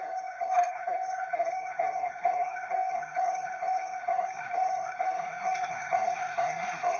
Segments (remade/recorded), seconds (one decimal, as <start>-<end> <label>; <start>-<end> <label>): 0.0-7.0 remade